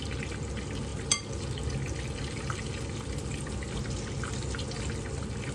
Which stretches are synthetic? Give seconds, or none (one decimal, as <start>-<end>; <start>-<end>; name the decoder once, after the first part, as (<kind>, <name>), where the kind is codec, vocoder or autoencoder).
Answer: none